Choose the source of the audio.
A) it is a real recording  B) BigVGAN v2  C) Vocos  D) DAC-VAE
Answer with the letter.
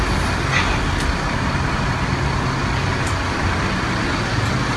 A